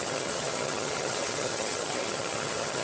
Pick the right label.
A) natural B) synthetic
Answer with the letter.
B